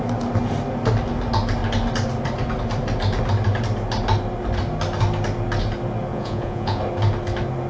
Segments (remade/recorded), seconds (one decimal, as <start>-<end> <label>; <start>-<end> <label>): 0.0-6.1 recorded; 6.1-6.8 remade; 6.8-7.7 recorded